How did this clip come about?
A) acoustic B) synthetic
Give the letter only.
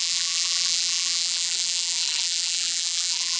B